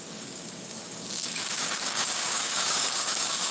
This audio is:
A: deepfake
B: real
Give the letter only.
A